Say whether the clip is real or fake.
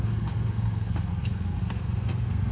fake